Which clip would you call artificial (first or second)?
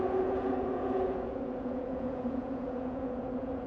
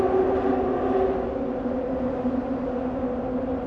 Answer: first